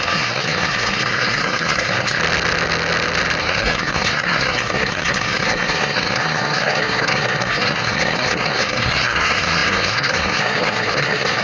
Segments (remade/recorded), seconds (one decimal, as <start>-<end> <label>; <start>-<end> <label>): 0.0-2.2 remade; 2.2-3.4 recorded; 3.4-11.4 remade